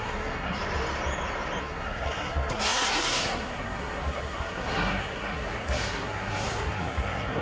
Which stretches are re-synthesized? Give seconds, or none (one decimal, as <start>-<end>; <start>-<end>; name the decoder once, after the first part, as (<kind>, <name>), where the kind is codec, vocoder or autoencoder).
0.0-0.6 (codec, SNAC); 1.6-7.4

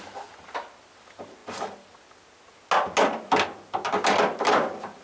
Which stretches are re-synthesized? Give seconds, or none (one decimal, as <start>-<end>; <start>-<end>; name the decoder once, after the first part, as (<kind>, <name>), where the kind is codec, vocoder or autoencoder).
none